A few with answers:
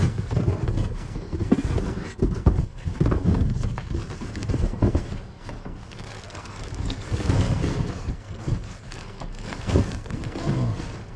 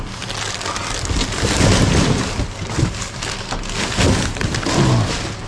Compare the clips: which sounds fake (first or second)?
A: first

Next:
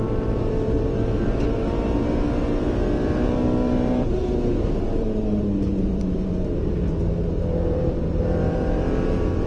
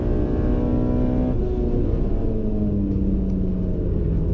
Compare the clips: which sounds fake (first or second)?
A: first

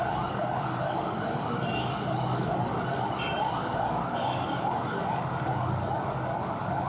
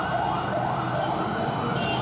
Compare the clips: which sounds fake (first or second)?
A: first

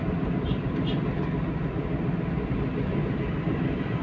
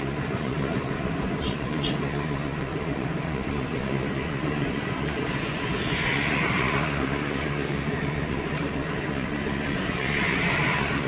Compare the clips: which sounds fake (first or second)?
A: second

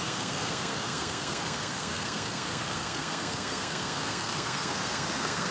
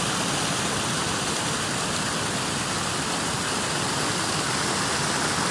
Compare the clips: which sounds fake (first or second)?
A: first